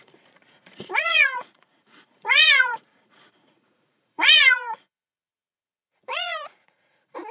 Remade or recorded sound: remade